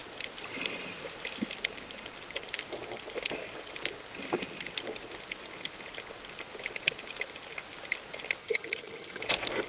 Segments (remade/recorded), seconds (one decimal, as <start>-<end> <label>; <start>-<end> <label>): 0.0-8.4 recorded; 8.4-9.2 remade; 9.2-9.7 recorded

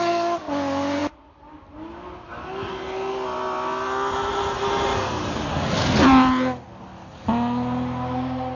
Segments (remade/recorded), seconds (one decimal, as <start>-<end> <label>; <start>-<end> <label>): 0.0-8.5 recorded

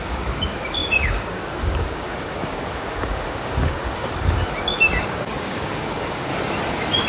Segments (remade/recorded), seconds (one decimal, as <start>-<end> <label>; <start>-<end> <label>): 0.0-6.3 remade; 6.3-7.1 recorded

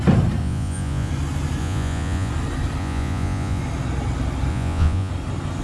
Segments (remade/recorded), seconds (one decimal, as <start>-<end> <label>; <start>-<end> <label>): 0.0-0.4 recorded; 0.4-1.1 remade; 1.1-1.6 recorded; 1.6-2.3 remade; 2.3-2.8 recorded; 2.8-3.6 remade; 3.6-4.5 recorded; 4.5-5.1 remade; 5.1-5.6 recorded